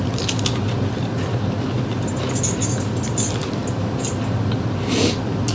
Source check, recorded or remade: recorded